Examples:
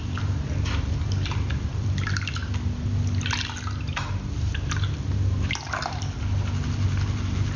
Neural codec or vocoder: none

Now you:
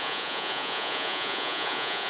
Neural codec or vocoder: vocoder, Vocos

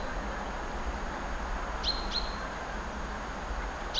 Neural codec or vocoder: none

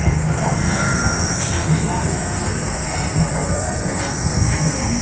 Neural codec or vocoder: codec, SNAC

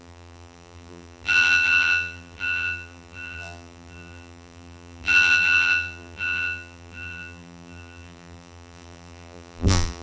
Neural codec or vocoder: vocoder, BigVGAN v2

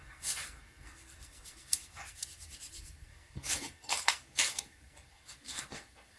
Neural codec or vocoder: codec, SNAC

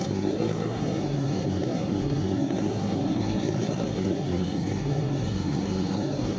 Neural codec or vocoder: codec, SNAC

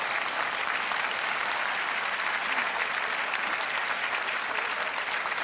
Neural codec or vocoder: none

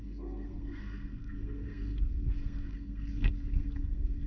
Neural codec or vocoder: codec, SNAC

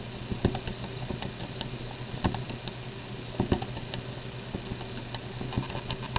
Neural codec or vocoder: none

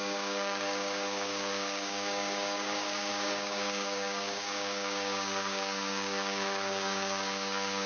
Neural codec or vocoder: codec, DAC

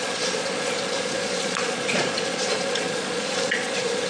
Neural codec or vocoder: vocoder, Vocos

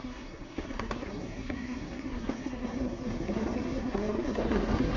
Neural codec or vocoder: codec, SNAC